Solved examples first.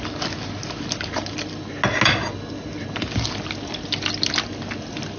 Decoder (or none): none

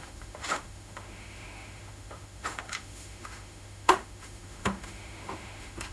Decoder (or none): autoencoder, DAC-VAE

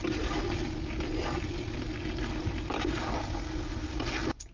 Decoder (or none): none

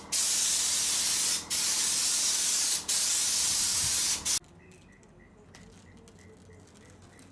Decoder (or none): none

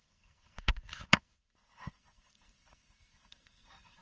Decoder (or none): codec, SNAC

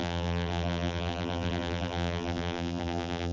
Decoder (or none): vocoder, BigVGAN v2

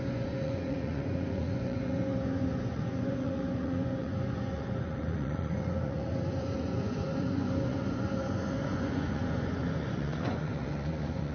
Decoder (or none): vocoder, Vocos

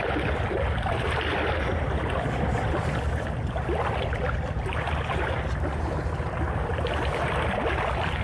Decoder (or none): none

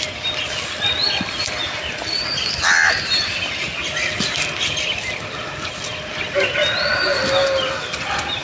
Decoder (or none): none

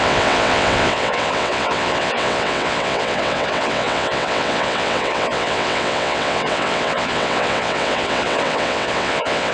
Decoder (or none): vocoder, WaveNeXt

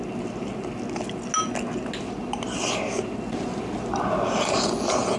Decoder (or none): none